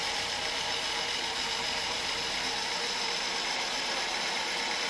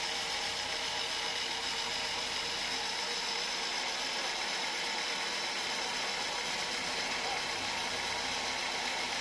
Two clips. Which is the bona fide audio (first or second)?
second